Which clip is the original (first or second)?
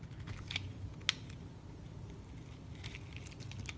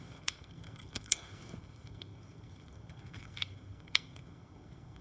first